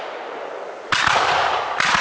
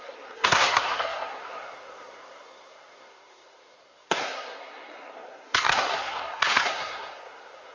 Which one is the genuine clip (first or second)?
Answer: first